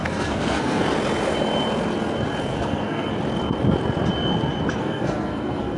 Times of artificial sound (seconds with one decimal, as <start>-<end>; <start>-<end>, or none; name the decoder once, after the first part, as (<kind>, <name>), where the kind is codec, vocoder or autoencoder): 0.0-0.8 (codec, SNAC); 2.5-3.1; 4.8-5.8